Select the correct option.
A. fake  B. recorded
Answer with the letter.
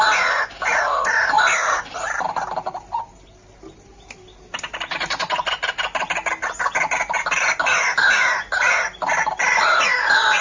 B